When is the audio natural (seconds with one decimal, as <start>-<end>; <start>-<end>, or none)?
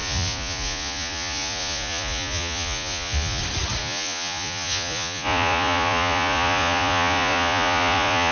3.4-3.8